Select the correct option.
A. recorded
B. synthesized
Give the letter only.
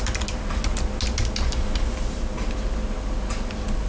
A